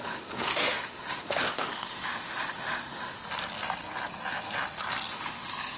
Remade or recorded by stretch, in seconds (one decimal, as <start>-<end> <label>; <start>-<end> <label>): 0.0-3.2 remade; 3.2-5.1 recorded; 5.1-5.8 remade